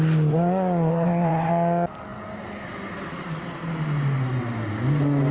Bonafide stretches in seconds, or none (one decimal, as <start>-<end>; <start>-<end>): 0.0-0.9; 1.5-5.3